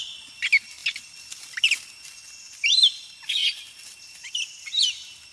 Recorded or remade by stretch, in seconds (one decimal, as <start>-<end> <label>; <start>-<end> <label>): 0.0-5.3 recorded